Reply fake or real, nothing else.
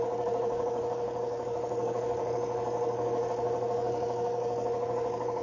fake